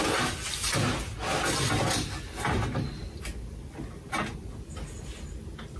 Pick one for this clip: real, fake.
real